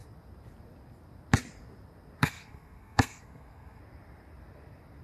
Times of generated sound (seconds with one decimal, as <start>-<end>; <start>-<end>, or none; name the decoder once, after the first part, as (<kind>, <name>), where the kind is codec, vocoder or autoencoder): 2.2-3.8 (codec, SNAC)